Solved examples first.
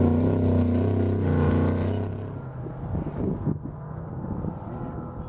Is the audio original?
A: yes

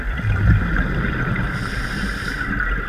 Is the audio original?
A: yes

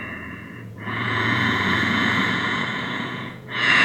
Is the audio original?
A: no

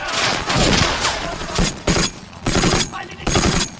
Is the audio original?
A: no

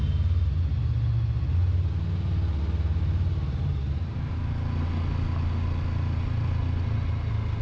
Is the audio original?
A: yes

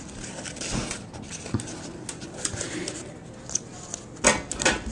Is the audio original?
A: yes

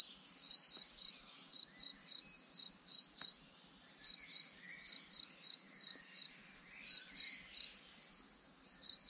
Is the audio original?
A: yes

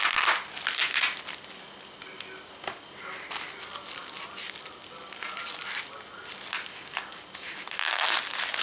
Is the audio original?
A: yes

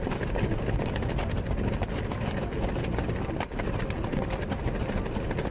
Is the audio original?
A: yes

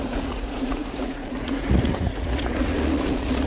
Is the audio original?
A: no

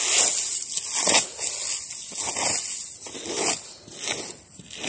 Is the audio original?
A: yes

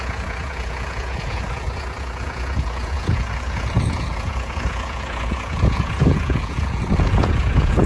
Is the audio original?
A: no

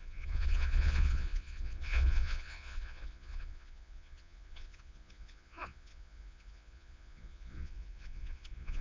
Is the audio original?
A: no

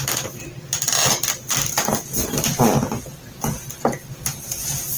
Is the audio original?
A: yes